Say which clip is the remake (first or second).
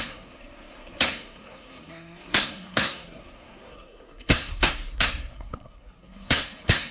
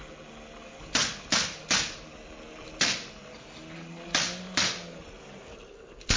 first